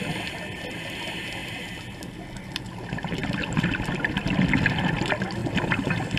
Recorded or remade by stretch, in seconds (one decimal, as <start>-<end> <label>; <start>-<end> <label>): 0.0-6.2 recorded